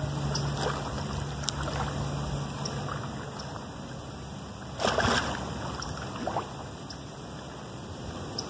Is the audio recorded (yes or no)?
yes